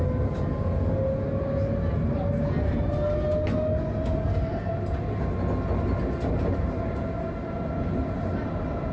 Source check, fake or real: real